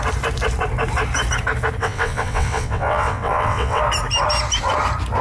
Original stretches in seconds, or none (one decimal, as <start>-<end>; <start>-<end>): 0.0-1.8; 3.8-5.2

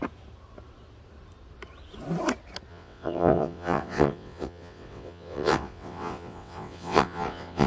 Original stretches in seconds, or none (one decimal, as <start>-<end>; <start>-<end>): 0.0-2.7

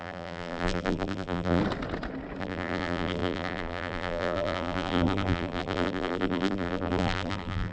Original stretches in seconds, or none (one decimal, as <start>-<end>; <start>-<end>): 1.6-2.4

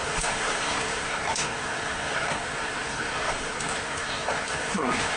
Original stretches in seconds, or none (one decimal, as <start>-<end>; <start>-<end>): none

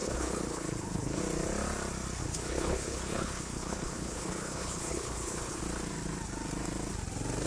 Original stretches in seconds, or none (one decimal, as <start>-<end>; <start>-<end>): 1.2-2.2; 5.6-7.5

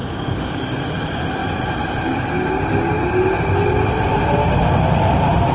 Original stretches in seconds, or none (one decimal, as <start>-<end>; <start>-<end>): 0.8-5.5